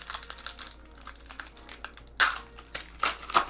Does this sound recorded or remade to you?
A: recorded